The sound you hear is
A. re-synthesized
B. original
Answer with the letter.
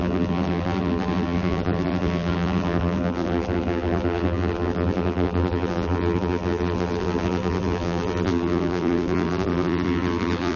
A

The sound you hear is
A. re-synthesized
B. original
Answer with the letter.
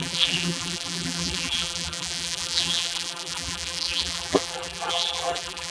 A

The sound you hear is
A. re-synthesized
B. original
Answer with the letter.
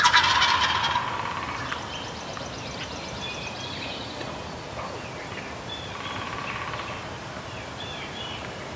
A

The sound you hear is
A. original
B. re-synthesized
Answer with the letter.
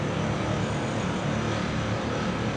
A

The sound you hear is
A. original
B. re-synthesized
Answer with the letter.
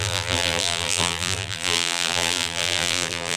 B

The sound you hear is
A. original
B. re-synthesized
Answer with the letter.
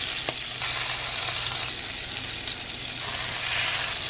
A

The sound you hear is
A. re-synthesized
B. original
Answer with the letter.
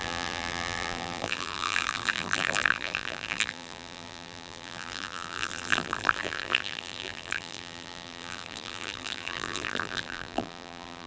A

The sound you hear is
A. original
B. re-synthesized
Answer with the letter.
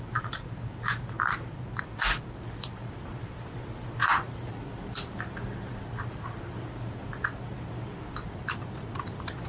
A